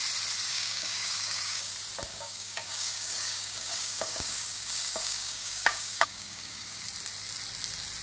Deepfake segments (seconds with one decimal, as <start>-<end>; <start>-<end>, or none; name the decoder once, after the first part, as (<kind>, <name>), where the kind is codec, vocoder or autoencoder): 0.5-1.7 (codec, DAC); 2.1-6.8